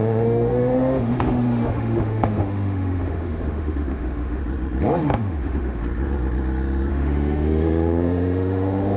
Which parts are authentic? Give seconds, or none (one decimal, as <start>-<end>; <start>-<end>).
4.4-5.0; 5.8-6.9